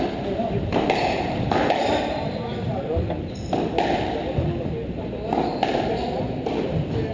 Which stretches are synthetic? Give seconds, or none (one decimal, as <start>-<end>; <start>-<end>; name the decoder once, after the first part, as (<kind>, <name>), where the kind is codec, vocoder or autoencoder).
none